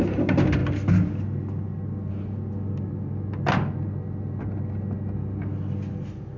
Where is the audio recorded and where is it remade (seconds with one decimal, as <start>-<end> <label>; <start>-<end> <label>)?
0.0-6.4 recorded